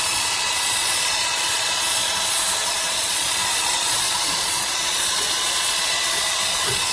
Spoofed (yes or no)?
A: yes